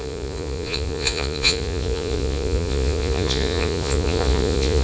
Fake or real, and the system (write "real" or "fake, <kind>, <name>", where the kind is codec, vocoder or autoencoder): fake, vocoder, Vocos